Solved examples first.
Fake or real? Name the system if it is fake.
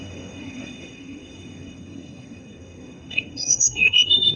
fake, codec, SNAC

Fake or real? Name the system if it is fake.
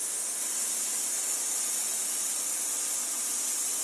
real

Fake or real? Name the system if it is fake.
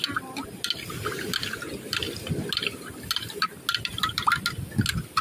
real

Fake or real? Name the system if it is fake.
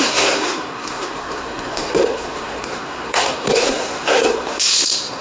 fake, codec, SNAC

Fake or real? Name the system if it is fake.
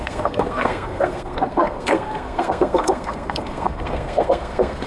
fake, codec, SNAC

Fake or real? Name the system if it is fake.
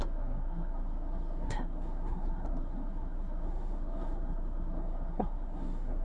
fake, codec, SNAC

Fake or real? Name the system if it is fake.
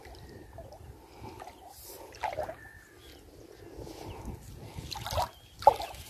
real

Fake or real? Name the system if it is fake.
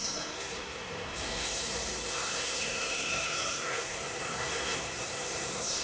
fake, codec, SNAC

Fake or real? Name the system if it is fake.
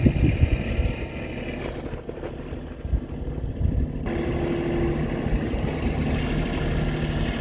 real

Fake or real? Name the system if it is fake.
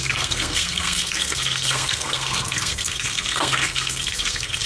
fake, codec, SNAC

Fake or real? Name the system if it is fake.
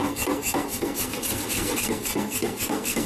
fake, codec, SNAC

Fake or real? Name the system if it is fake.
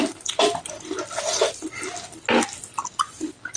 real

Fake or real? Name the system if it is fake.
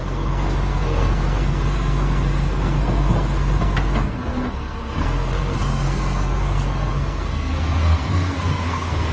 fake, codec, SNAC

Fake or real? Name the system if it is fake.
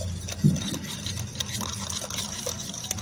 real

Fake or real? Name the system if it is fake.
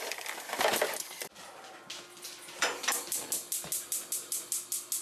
real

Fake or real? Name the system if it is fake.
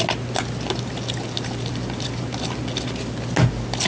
real